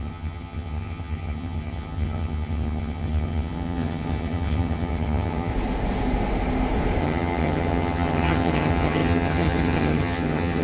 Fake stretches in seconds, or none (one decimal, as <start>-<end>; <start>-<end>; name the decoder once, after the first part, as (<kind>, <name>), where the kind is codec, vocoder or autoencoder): 0.0-5.5 (vocoder, HiFi-GAN); 7.0-10.6